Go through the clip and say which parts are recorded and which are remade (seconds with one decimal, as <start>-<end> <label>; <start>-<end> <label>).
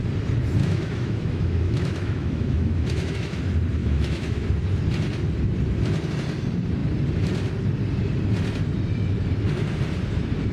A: 0.0-0.6 recorded; 0.6-3.4 remade; 3.4-3.8 recorded; 3.8-4.5 remade; 4.5-10.5 recorded